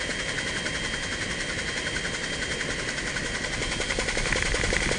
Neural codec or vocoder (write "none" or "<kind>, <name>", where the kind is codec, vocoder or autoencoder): none